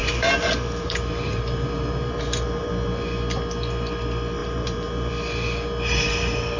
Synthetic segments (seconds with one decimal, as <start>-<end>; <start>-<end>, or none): 0.0-2.7; 4.4-5.1